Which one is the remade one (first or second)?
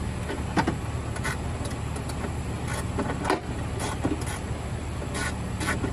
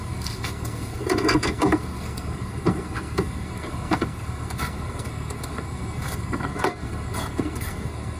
second